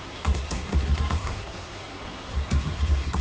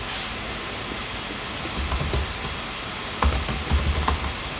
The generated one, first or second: first